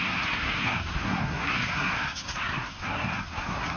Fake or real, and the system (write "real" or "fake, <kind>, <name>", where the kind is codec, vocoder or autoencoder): fake, codec, SNAC